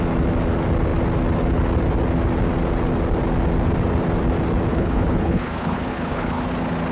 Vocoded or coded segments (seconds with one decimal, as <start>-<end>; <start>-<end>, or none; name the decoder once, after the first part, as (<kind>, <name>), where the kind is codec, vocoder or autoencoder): 4.7-6.5 (codec, HILCodec)